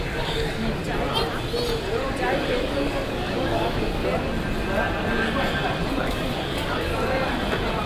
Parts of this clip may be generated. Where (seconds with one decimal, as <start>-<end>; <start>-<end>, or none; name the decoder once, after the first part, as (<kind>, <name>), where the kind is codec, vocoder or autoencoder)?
0.0-0.8 (codec, DAC); 2.6-4.0; 5.9-6.9